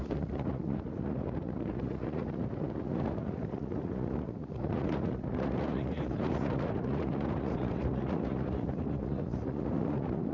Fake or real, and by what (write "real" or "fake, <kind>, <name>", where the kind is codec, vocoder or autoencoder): fake, vocoder, Vocos